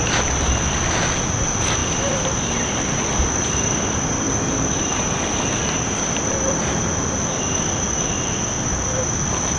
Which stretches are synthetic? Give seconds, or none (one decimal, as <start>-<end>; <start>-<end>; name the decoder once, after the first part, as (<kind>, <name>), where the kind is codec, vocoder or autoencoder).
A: 1.8-5.2 (vocoder, BigVGAN v2)

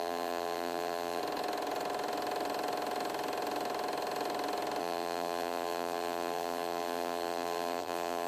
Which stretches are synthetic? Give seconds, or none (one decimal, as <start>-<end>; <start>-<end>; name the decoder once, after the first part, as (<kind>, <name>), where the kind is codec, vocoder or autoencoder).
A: 0.0-1.2 (vocoder, BigVGAN v2); 4.8-8.3

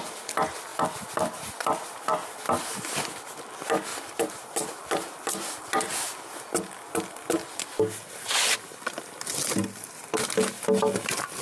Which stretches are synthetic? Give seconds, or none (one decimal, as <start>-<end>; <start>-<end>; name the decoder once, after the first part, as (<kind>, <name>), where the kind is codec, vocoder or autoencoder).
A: 0.7-3.0 (vocoder, BigVGAN v2)

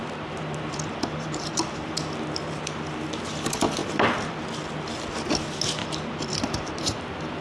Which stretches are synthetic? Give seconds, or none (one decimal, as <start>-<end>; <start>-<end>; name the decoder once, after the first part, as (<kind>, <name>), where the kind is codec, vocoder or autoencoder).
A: 0.0-2.0 (vocoder, BigVGAN v2); 3.8-4.4; 5.8-7.4

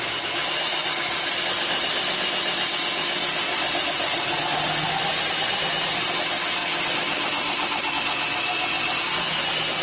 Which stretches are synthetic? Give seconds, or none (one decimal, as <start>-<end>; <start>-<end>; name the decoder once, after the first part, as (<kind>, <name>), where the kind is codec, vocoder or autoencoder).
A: none

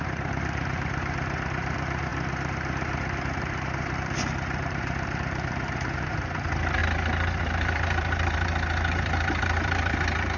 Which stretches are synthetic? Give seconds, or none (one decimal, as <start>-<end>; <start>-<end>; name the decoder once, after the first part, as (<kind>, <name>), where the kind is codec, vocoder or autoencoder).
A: 0.0-6.8 (vocoder, BigVGAN v2); 7.4-10.4

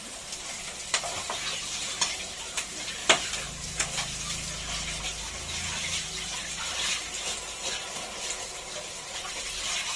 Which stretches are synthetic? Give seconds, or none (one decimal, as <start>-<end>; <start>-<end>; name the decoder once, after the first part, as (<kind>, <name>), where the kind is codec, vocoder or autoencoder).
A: 0.0-6.4 (vocoder, BigVGAN v2); 9.4-10.0

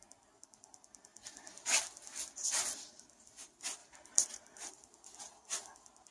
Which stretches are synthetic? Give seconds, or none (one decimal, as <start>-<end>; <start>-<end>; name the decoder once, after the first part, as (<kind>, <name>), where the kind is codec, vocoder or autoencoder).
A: 3.8-4.7 (vocoder, BigVGAN v2)